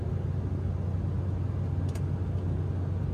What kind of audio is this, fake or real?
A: real